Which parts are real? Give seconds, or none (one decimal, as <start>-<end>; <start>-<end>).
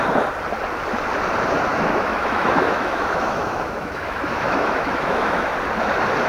0.0-1.7; 5.5-6.3